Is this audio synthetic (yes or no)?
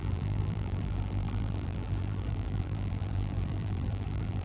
yes